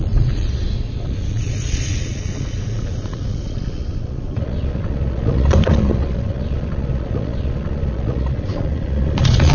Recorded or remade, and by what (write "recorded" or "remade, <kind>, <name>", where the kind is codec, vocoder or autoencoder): remade, vocoder, Vocos